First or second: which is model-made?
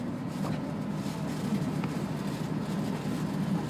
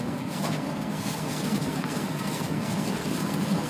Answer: second